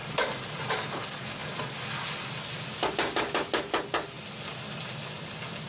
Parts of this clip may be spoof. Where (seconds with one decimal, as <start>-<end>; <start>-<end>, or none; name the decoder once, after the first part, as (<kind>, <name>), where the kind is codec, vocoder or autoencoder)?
none